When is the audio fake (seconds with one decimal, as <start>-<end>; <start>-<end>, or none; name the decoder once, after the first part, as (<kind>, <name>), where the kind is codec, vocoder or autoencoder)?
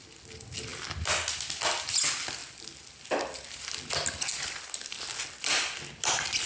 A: none